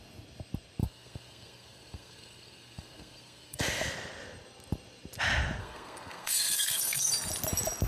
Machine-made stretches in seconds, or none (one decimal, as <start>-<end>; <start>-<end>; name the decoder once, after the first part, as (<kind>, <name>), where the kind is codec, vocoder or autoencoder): 0.8-3.6 (codec, SNAC); 5.6-7.1